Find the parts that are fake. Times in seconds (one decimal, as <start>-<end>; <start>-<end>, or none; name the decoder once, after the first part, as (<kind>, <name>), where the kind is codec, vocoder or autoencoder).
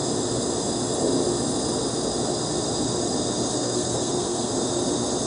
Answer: 3.5-4.5 (codec, SNAC)